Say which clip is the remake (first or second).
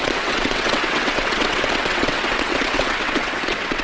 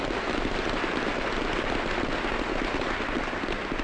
first